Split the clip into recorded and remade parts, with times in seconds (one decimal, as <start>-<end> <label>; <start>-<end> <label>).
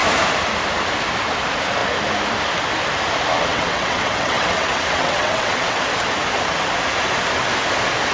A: 0.0-3.5 recorded; 3.5-5.8 remade; 5.8-8.1 recorded